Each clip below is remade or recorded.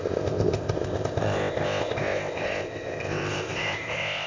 remade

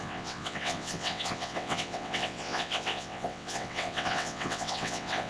remade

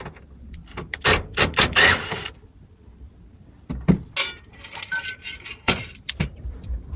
recorded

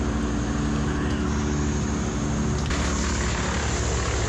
recorded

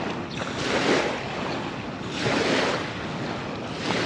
recorded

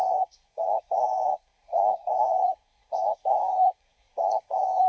remade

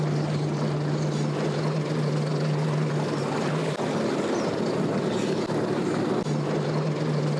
recorded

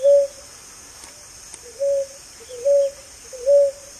recorded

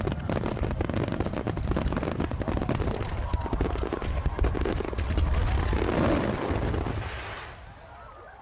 recorded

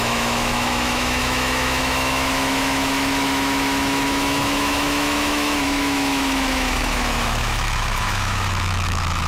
remade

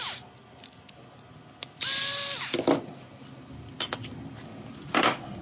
recorded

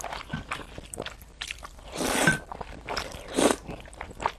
remade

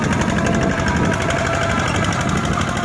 recorded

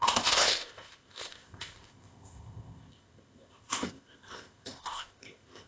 remade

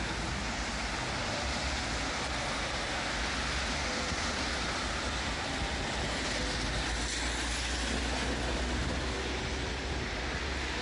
recorded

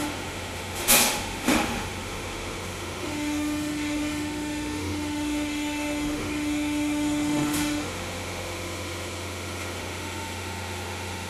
remade